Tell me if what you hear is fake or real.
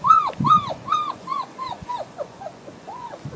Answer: fake